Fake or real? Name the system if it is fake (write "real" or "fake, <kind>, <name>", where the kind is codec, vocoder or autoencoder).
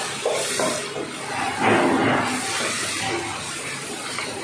real